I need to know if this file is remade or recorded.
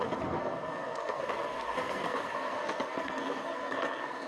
remade